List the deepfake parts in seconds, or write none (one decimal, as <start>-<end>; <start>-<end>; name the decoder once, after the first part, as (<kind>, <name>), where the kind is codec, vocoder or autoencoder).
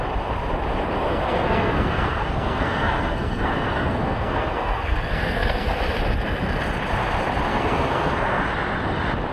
1.1-5.8 (codec, SNAC); 7.5-8.4